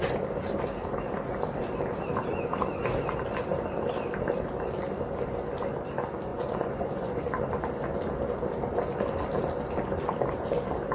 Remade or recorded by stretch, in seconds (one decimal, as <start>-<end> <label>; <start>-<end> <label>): 0.0-6.3 recorded; 6.3-7.3 remade; 7.3-10.9 recorded